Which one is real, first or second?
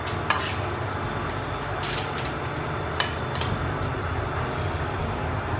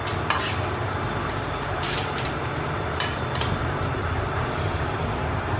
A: first